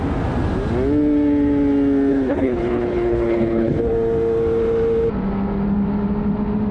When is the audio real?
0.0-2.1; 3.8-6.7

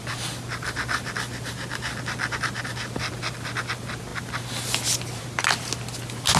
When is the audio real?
0.0-6.4

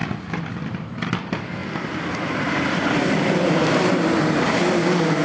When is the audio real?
0.0-5.2